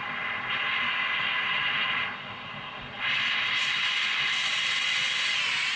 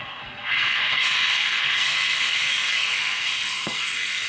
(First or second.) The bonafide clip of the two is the first